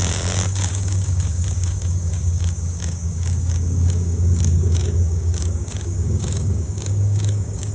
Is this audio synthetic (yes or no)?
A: yes